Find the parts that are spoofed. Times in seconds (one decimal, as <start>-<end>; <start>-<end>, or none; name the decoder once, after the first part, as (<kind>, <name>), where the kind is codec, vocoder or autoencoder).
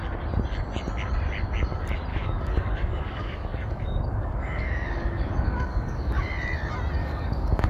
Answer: 2.1-6.2 (codec, DAC); 7.0-7.7